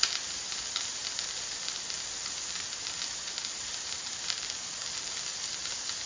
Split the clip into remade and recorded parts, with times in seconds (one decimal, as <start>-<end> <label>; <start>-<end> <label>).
0.0-3.5 recorded; 3.5-4.6 remade; 4.6-6.1 recorded